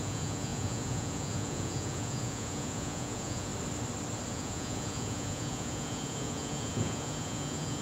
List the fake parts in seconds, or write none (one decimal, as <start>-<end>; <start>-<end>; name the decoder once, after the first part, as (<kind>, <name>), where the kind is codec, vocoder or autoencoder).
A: 0.0-3.5 (vocoder, Vocos); 4.3-7.8